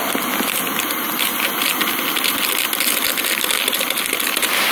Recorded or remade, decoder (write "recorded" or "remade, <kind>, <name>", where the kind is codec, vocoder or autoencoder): recorded